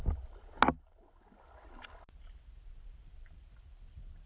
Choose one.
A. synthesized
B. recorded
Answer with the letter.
B